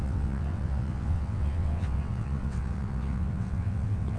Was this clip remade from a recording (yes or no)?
yes